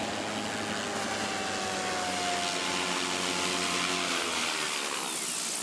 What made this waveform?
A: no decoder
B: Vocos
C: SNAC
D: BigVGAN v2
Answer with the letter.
A